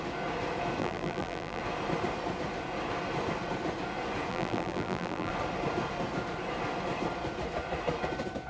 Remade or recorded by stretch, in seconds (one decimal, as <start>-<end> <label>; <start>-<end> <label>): 0.0-0.8 recorded; 0.8-1.6 remade; 1.6-4.3 recorded; 4.3-5.3 remade; 5.3-8.5 recorded